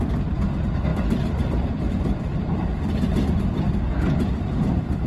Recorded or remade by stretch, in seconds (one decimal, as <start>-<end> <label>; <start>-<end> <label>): 0.0-5.1 remade